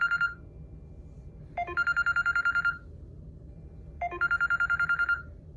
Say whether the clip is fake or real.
real